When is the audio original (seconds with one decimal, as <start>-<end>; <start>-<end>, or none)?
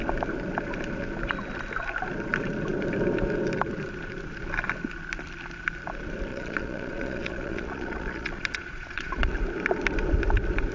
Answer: 0.0-6.3; 9.3-10.7